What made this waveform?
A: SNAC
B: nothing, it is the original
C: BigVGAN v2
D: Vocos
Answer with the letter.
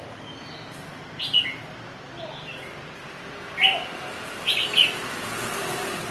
B